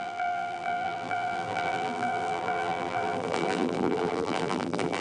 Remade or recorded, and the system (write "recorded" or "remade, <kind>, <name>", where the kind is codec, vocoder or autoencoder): remade, vocoder, BigVGAN v2